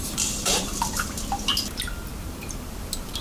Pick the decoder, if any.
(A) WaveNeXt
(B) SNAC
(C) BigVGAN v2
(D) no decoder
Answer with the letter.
C